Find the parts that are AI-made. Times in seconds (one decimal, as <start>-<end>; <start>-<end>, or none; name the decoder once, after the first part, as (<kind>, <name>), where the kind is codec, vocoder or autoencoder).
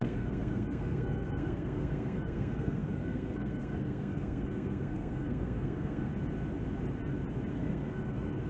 0.0-6.1 (codec, SNAC); 7.5-8.5